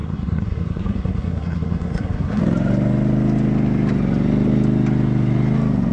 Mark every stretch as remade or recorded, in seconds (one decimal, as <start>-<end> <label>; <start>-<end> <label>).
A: 0.0-2.4 remade; 2.4-5.9 recorded